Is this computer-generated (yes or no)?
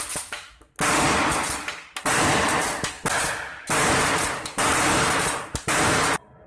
no